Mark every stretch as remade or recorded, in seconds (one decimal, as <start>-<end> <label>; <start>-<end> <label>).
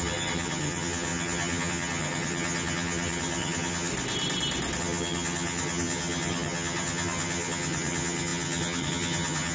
0.0-3.9 remade; 3.9-4.8 recorded; 4.8-9.5 remade